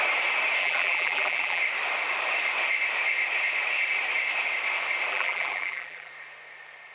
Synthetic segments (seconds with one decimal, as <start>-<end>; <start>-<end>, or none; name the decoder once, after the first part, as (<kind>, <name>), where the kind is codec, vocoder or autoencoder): 0.6-1.6 (vocoder, BigVGAN v2); 5.1-6.1